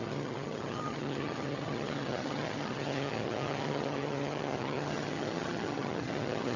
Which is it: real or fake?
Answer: fake